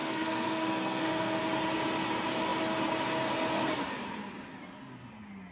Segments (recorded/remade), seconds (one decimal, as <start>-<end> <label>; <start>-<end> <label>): 0.0-1.4 remade; 1.4-5.5 recorded